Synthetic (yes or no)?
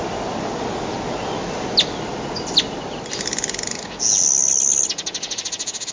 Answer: no